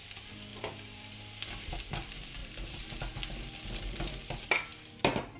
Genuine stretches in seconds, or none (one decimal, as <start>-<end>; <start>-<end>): 0.0-0.5; 1.1-2.4; 3.0-5.4